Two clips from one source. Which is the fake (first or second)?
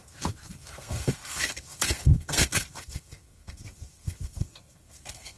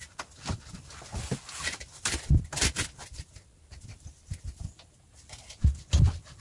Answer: first